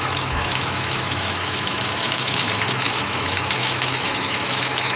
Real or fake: fake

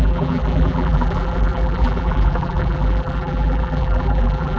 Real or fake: fake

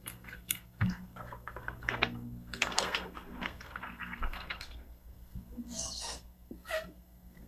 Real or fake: fake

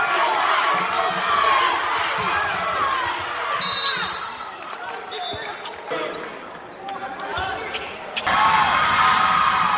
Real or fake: real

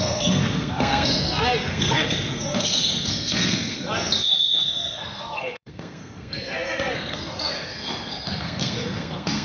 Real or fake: fake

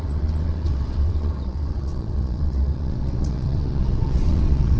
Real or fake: fake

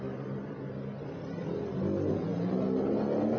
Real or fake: real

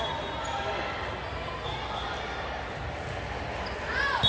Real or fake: real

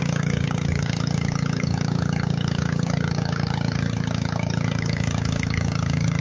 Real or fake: fake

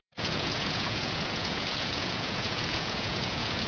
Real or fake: fake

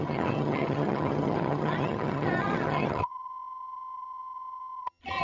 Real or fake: fake